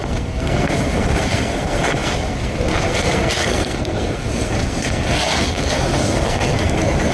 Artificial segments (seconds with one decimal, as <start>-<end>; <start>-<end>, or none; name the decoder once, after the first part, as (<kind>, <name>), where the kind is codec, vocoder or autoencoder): 0.0-7.1 (codec, SNAC)